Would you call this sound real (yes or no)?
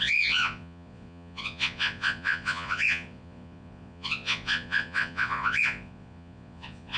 no